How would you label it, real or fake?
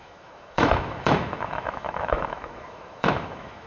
fake